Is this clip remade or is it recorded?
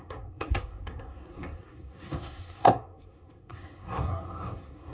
remade